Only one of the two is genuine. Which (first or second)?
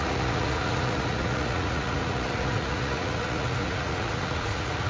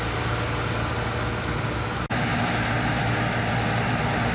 second